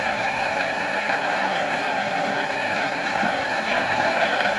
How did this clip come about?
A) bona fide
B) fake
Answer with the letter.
B